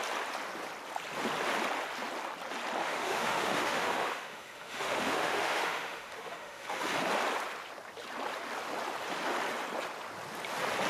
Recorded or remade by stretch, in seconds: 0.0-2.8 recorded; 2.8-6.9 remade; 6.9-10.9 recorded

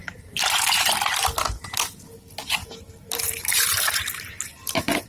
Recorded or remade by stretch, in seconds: 0.0-0.9 remade; 0.9-2.6 recorded; 2.6-5.1 remade